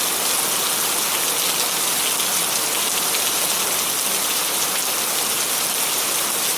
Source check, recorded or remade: recorded